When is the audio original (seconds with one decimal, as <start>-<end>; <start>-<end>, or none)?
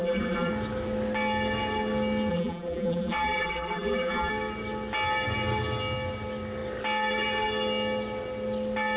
0.5-2.3; 4.3-9.0